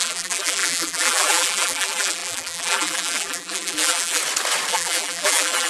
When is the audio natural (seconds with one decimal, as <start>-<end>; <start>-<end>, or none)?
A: 4.2-4.7